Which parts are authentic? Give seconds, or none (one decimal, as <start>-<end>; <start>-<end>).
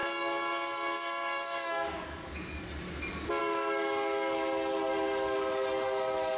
2.6-3.4